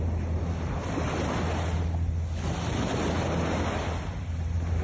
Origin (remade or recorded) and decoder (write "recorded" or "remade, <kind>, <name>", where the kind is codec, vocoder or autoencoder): recorded